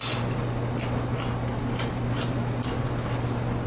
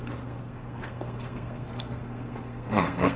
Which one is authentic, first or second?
first